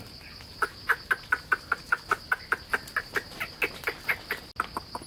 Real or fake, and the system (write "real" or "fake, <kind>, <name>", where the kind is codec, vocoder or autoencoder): real